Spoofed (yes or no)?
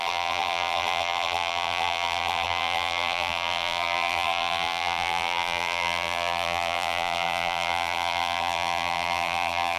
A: yes